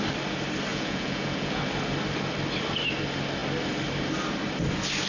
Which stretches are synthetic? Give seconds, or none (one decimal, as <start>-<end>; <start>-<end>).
0.7-1.6